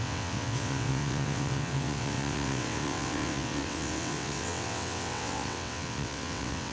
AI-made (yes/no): yes